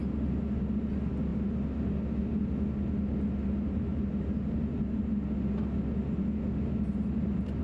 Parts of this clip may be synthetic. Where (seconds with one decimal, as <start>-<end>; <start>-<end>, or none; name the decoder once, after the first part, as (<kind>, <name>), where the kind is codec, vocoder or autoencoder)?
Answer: none